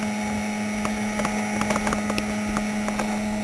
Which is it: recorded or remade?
recorded